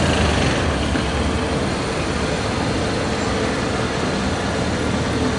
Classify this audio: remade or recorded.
recorded